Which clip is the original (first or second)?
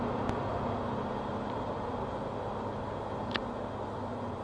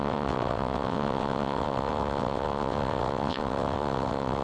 first